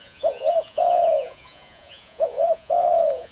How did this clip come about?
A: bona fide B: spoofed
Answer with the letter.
B